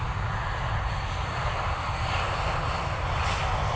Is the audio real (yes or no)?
yes